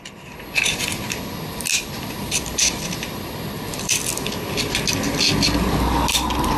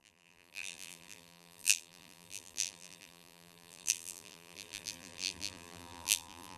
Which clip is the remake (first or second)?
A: second